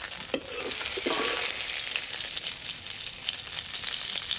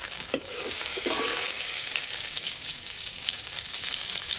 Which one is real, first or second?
first